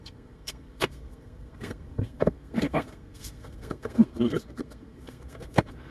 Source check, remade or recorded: remade